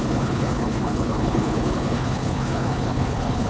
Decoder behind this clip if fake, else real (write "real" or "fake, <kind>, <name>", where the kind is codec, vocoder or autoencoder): fake, codec, HILCodec